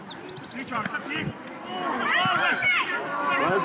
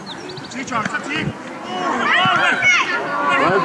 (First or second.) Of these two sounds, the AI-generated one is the first